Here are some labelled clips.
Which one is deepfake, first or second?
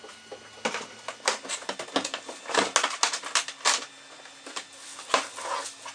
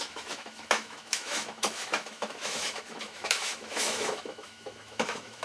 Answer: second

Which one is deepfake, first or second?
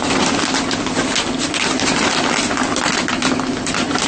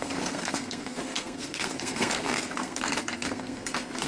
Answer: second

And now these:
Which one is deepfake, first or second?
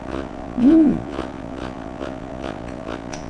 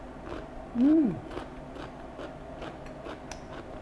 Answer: first